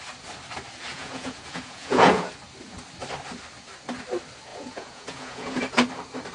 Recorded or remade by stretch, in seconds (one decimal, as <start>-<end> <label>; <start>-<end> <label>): 0.0-0.9 recorded; 0.9-2.3 remade; 2.3-4.5 recorded; 4.5-5.6 remade; 5.6-6.3 recorded